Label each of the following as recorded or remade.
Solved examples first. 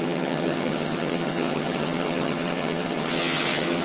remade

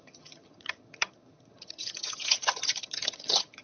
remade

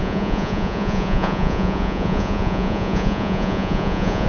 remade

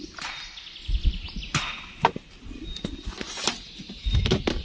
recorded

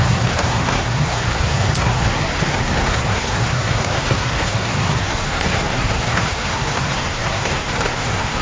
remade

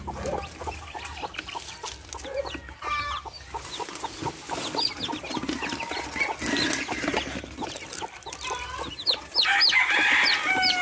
recorded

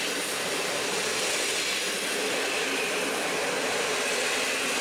recorded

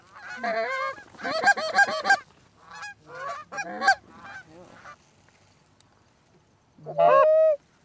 recorded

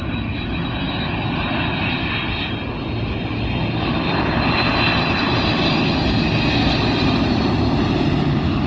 recorded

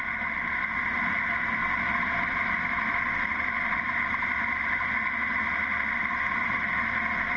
recorded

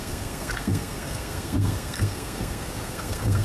remade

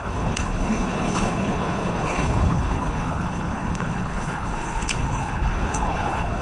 remade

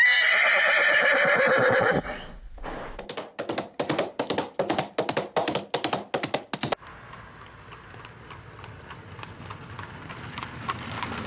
recorded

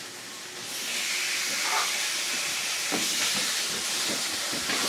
recorded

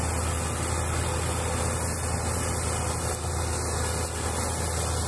recorded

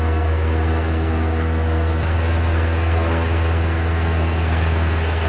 remade